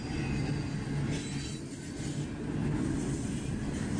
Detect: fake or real real